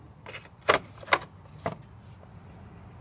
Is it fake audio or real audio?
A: real